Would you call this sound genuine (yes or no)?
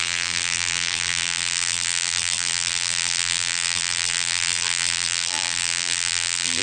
no